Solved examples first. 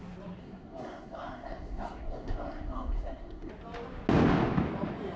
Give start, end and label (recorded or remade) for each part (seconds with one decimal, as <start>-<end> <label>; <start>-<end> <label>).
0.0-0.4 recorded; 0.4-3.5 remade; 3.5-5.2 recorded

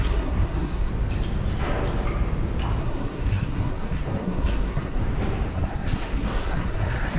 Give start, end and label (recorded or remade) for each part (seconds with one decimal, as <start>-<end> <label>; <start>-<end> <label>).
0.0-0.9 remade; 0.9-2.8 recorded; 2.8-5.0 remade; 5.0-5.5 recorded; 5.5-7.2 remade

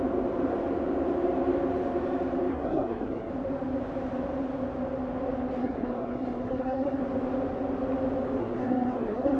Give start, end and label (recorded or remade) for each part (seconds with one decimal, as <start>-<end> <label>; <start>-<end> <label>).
0.0-2.5 recorded; 2.5-3.3 remade; 3.3-5.6 recorded; 5.6-7.0 remade; 7.0-8.4 recorded; 8.4-9.4 remade

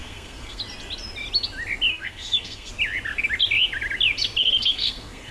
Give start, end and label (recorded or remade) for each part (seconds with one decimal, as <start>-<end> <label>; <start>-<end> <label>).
0.0-0.6 remade; 0.6-1.9 recorded; 1.9-2.7 remade; 2.7-4.4 recorded; 4.4-5.3 remade

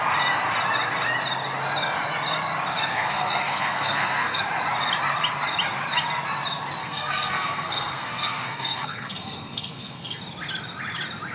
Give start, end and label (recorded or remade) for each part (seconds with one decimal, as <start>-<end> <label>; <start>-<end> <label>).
0.0-2.9 recorded; 2.9-4.4 remade; 4.4-6.8 recorded; 6.8-10.2 remade; 10.2-11.3 recorded

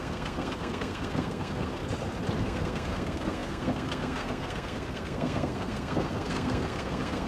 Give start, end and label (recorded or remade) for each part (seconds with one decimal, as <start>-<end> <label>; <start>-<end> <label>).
0.0-1.8 remade; 1.8-2.4 recorded; 2.4-7.3 remade

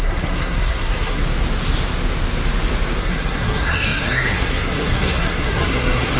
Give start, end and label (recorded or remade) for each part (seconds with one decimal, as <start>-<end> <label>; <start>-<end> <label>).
0.0-1.2 remade; 1.2-3.0 recorded; 3.0-6.2 remade

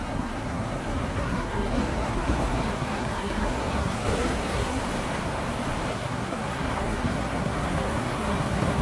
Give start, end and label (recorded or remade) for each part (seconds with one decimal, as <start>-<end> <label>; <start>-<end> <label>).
0.0-4.8 remade; 4.8-5.9 recorded; 5.9-8.8 remade